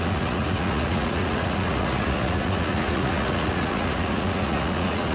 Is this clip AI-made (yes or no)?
yes